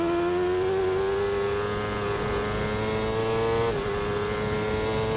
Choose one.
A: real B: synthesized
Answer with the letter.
A